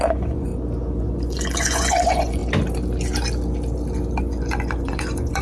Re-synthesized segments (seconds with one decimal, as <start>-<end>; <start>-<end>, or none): 0.0-0.5; 1.0-2.4; 4.2-5.4